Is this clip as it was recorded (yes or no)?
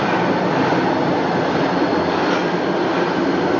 yes